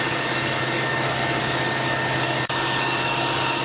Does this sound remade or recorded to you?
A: remade